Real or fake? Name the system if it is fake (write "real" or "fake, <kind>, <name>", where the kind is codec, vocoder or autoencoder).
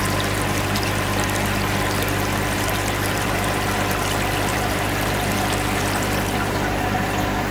real